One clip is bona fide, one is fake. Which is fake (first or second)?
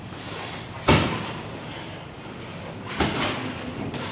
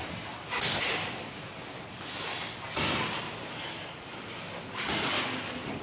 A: first